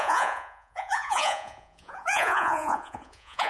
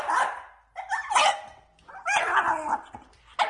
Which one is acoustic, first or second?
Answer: second